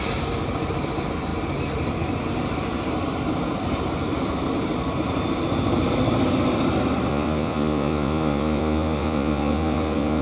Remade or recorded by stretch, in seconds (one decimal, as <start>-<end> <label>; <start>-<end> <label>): 0.0-7.1 recorded; 7.1-10.2 remade